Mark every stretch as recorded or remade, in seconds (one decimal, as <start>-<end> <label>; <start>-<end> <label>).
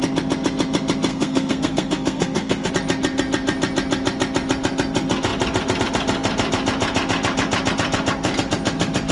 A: 0.0-1.1 recorded; 1.1-2.7 remade; 2.7-9.1 recorded